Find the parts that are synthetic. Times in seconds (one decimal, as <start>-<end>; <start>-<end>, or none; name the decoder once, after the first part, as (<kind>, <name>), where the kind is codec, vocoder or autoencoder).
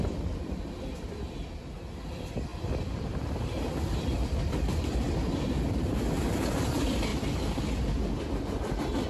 7.1-7.6 (vocoder, BigVGAN v2)